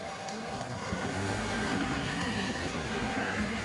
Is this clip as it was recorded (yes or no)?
no